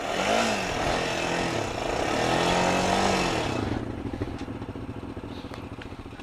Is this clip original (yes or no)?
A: yes